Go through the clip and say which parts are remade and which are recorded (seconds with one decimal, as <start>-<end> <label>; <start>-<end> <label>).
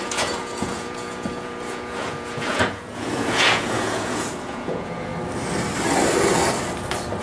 0.0-5.1 remade; 5.1-7.2 recorded